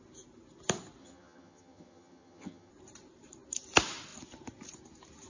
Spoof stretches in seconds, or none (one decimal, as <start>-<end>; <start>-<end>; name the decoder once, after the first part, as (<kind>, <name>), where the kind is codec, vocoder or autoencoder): 1.0-2.7 (vocoder, HiFi-GAN)